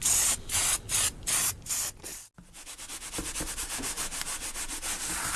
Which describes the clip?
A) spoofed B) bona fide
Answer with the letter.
B